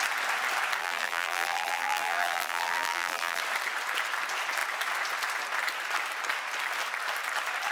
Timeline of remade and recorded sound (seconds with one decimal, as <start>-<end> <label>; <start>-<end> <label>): 0.0-0.8 recorded; 0.8-3.4 remade; 3.4-7.7 recorded